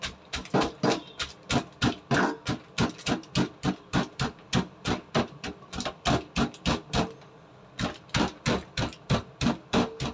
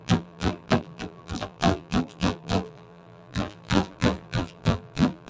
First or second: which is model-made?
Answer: second